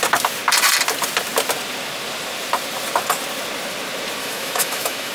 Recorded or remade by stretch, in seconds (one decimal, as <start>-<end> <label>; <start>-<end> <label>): 0.0-4.2 recorded; 4.2-5.1 remade